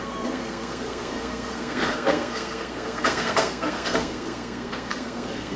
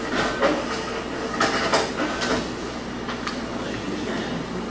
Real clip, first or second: second